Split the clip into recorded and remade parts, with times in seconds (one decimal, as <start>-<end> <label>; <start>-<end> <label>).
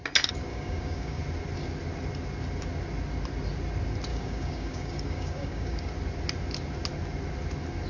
0.0-0.5 recorded; 0.5-1.2 remade; 1.2-4.1 recorded; 4.1-5.9 remade; 5.9-7.9 recorded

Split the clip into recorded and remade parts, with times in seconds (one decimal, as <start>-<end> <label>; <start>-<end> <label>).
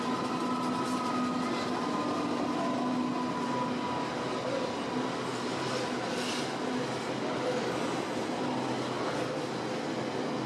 0.0-10.5 recorded